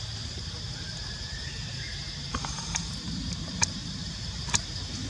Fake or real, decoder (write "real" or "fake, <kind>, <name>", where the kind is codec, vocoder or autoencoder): fake, vocoder, BigVGAN v2